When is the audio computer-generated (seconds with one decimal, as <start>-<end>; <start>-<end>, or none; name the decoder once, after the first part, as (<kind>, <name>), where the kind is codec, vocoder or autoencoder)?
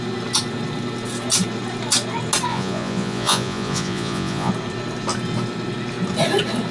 2.5-4.5 (vocoder, Vocos)